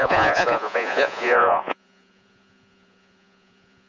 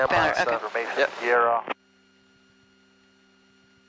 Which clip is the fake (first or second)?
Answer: first